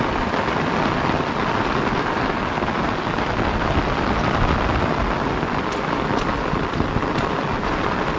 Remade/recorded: recorded